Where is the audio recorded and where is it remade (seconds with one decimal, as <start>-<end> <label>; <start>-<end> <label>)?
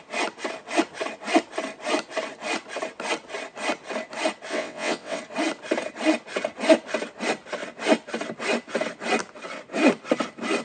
0.0-4.5 recorded; 4.5-5.2 remade; 5.2-10.6 recorded